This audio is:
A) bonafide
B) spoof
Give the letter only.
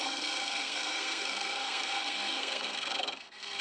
B